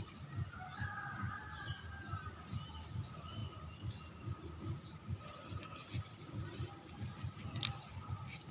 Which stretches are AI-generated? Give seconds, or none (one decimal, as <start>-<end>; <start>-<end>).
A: none